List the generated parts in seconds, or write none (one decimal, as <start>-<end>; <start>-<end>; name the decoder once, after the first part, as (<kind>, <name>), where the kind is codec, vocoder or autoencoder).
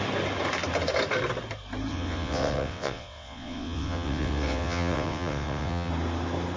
1.9-5.9 (vocoder, WaveNeXt)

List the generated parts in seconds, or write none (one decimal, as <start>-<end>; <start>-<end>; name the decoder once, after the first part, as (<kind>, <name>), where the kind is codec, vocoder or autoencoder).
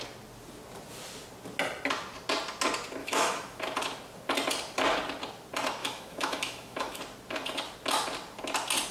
3.0-3.6 (autoencoder, DAC-VAE); 5.8-7.0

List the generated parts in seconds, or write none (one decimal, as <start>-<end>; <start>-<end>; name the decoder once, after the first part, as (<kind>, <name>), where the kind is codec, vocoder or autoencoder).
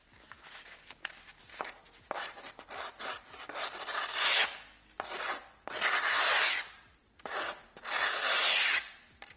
none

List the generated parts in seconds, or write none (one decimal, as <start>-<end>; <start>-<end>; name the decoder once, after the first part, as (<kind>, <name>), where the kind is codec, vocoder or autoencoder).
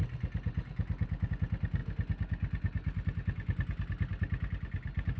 none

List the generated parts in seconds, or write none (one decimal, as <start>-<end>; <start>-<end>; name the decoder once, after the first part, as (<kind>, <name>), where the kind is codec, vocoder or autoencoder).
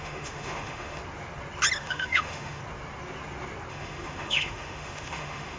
0.0-1.0 (autoencoder, DAC-VAE); 1.8-2.6; 3.7-5.6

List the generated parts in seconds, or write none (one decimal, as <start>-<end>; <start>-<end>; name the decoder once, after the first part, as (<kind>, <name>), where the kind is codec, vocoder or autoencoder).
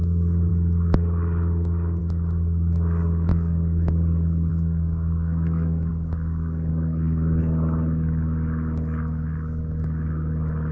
3.3-3.9 (codec, DAC); 4.5-5.9; 6.7-7.4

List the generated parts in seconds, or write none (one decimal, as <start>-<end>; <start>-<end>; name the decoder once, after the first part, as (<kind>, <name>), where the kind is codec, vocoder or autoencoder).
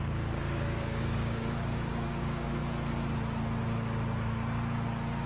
0.0-2.6 (codec, DAC)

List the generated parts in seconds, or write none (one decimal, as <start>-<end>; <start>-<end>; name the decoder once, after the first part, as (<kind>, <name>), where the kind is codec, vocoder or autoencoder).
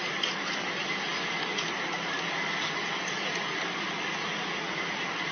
none